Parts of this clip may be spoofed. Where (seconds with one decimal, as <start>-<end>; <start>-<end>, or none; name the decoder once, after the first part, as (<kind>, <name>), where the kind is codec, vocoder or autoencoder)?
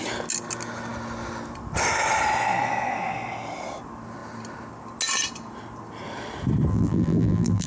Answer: 6.7-7.7 (vocoder, BigVGAN v2)